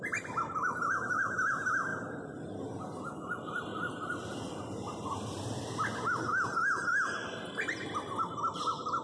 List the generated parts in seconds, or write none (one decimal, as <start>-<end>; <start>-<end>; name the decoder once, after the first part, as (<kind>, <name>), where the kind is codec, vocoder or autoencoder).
1.9-2.6 (vocoder, BigVGAN v2); 3.7-6.3; 7.2-8.4